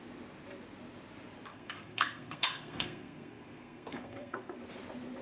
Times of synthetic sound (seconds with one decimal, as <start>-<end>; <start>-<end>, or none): 1.5-4.6